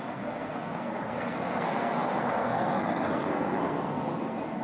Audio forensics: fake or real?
fake